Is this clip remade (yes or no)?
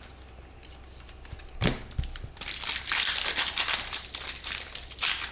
no